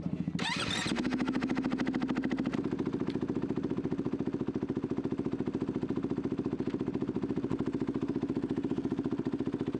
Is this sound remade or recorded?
recorded